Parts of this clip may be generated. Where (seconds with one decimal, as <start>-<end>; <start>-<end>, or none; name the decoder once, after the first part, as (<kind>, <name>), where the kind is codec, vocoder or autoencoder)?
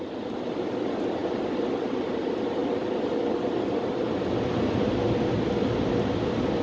none